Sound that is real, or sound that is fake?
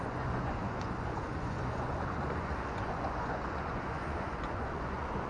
fake